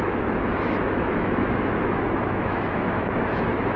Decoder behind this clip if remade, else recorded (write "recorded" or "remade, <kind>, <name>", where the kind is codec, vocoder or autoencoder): remade, autoencoder, DAC-VAE